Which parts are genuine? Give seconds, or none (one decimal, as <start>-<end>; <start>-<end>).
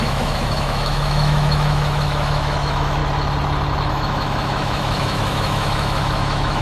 3.0-3.9